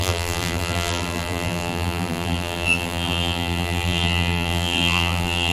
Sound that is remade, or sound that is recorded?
remade